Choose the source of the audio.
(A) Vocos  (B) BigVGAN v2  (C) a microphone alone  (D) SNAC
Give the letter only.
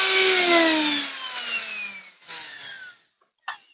C